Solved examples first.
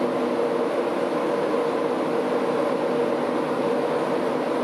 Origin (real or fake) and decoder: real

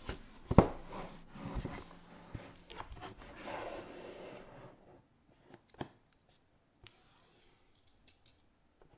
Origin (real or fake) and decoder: real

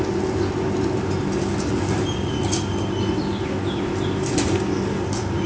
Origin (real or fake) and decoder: real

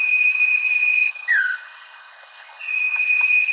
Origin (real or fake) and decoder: fake, codec, HILCodec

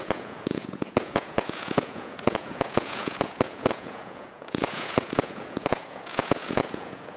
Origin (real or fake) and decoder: fake, vocoder, Vocos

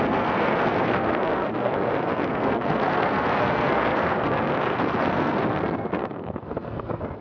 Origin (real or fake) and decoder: fake, codec, SNAC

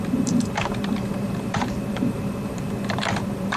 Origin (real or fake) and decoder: fake, vocoder, BigVGAN v2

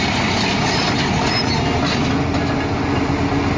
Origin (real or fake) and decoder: real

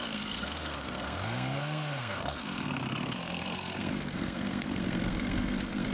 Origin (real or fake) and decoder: fake, codec, SNAC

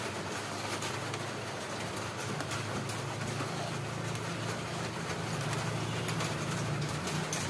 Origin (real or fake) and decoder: real